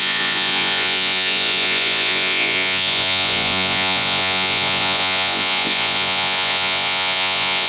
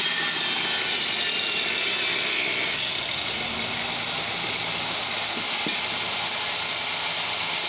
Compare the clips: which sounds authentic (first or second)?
second